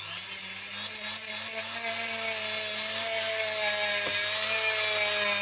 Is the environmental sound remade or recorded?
recorded